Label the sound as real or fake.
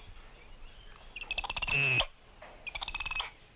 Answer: real